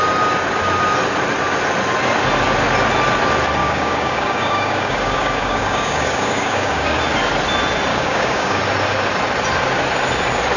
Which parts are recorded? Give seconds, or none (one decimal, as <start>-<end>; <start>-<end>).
0.0-3.6; 7.0-7.9; 8.6-10.6